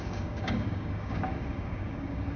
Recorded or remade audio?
remade